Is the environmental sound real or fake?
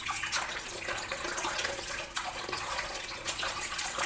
fake